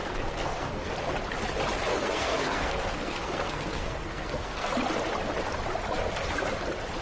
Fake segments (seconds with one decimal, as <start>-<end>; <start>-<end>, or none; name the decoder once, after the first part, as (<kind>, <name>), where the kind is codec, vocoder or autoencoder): 0.0-0.9 (codec, SNAC); 1.9-4.7